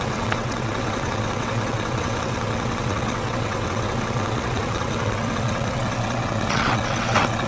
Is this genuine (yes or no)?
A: no